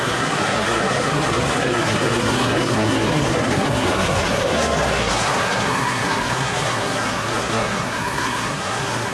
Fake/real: fake